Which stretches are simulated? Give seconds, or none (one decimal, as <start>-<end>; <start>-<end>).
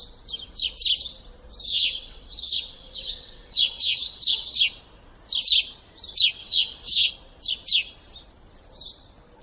1.7-4.6; 6.4-7.1